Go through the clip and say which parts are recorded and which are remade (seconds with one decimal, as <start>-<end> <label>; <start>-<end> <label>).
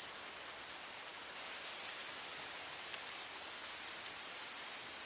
0.0-5.1 recorded